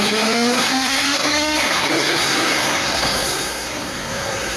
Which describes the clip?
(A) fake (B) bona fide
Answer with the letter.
A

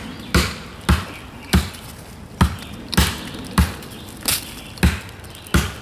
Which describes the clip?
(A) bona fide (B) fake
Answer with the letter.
A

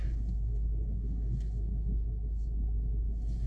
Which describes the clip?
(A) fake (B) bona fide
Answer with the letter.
A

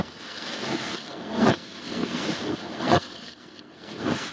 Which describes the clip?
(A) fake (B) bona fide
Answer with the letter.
A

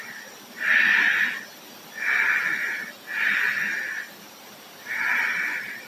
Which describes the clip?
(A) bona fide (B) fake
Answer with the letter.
A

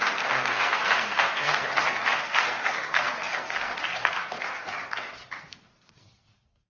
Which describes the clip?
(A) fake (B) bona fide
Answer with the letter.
A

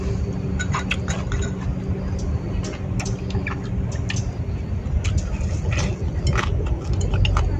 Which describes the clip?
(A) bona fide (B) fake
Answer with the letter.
A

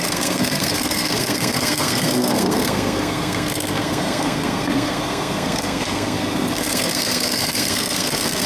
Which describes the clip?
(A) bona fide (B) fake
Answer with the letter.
B